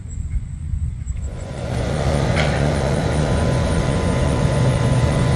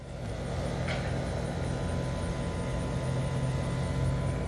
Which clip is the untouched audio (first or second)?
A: second